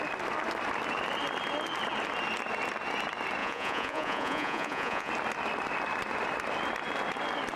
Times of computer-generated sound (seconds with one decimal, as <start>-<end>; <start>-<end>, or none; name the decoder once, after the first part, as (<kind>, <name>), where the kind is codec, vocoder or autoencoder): 3.4-5.1 (vocoder, Vocos)